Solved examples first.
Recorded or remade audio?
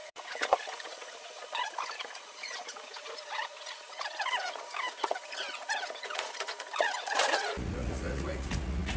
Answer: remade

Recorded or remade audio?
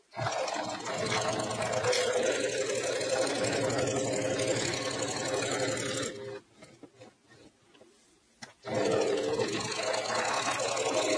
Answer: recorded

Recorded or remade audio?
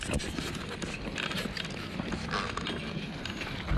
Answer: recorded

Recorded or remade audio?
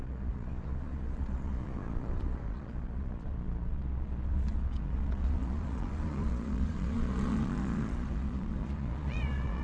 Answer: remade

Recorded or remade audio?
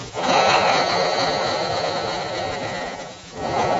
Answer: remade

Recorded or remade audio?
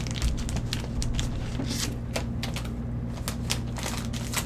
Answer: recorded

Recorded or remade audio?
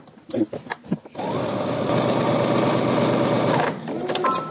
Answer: recorded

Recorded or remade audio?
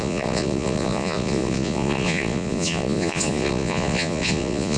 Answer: remade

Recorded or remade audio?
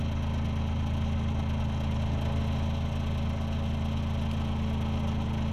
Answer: recorded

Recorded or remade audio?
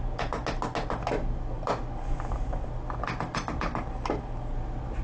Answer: recorded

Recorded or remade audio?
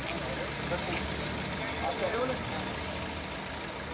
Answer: recorded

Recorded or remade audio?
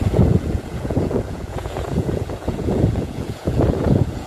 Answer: remade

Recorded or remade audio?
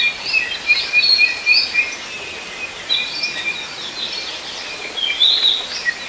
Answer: recorded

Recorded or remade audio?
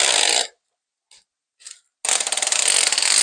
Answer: recorded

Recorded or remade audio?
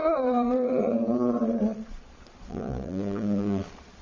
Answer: remade